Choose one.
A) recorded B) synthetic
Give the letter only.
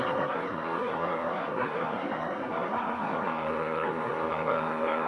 B